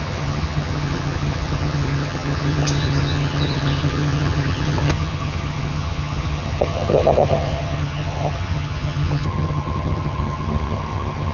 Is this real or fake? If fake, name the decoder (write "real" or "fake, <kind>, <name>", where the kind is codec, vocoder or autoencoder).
fake, vocoder, HiFi-GAN